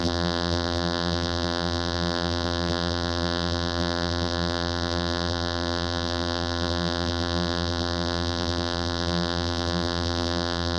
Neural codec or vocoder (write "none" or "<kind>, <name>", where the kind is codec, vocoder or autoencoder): vocoder, BigVGAN v2